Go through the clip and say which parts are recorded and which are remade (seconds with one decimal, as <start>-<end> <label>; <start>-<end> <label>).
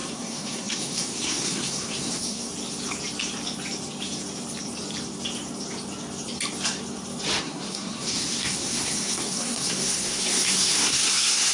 0.0-2.5 remade; 2.5-7.4 recorded; 7.4-11.5 remade